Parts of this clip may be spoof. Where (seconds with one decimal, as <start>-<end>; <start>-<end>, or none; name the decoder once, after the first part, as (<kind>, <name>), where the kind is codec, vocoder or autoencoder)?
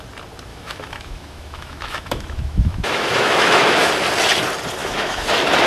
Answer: 0.5-3.9 (autoencoder, DAC-VAE); 4.8-5.3